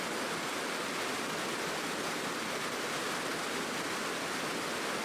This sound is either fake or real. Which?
real